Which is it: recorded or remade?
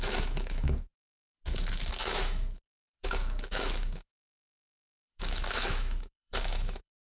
remade